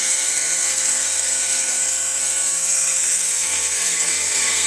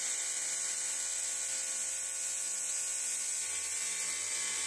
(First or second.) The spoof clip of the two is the first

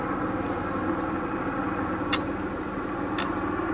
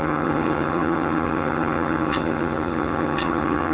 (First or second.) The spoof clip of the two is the second